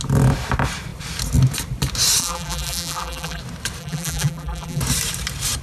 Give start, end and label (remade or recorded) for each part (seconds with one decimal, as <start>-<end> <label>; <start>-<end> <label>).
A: 0.0-2.2 recorded; 2.2-3.4 remade; 3.4-3.8 recorded; 3.8-4.8 remade; 4.8-5.6 recorded

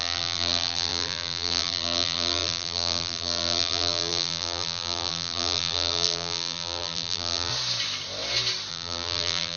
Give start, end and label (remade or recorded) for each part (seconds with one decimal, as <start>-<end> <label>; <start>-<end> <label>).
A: 0.0-7.5 remade; 7.5-8.7 recorded; 8.7-9.6 remade

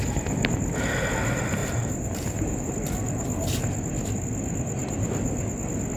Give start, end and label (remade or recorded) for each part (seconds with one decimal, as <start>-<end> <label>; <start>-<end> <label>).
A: 0.0-1.6 recorded; 1.6-2.7 remade; 2.7-6.0 recorded

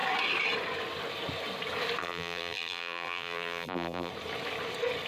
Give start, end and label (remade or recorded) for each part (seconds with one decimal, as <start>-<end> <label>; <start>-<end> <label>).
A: 0.0-2.0 recorded; 2.0-4.1 remade; 4.1-5.1 recorded

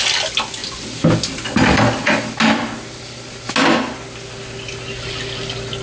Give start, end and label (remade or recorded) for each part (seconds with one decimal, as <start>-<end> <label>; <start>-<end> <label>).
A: 0.0-5.8 recorded

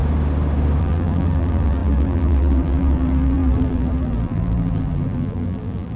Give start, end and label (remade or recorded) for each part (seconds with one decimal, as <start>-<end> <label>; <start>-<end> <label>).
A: 0.0-0.8 recorded; 0.8-6.0 remade

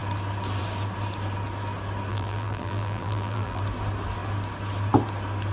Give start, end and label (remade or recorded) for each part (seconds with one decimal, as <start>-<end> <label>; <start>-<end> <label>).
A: 0.0-2.1 recorded; 2.1-3.6 remade; 3.6-5.5 recorded